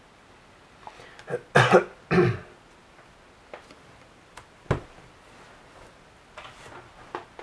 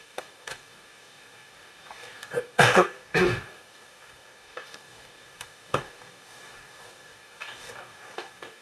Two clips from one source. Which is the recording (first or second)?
first